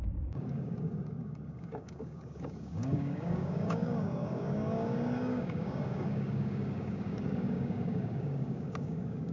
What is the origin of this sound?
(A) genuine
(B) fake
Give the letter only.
B